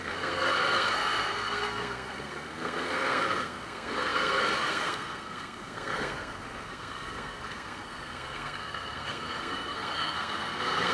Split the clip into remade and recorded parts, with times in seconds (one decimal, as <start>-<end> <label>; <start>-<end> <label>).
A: 0.0-10.9 remade